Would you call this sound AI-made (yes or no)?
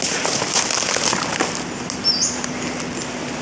no